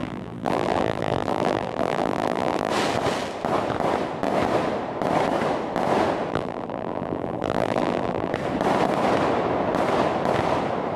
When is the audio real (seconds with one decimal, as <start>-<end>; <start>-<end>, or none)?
2.7-6.3; 8.3-11.0